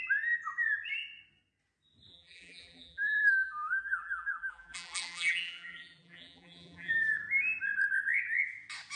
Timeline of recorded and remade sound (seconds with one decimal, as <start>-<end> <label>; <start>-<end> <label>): 0.0-2.1 recorded; 2.1-6.9 remade; 6.9-9.0 recorded